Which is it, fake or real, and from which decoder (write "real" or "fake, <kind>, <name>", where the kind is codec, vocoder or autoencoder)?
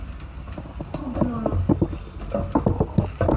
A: real